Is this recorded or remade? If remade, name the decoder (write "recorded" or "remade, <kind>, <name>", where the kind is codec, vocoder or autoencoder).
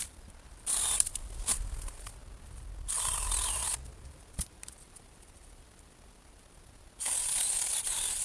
remade, vocoder, BigVGAN v2